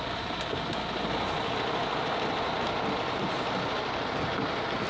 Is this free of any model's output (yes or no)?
yes